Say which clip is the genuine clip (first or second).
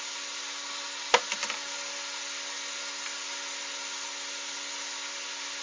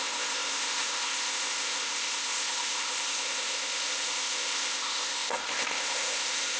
first